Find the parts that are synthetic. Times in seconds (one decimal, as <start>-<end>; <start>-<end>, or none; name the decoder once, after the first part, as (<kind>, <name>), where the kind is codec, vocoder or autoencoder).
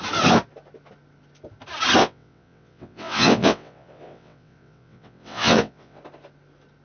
2.0-6.0 (vocoder, WaveNeXt)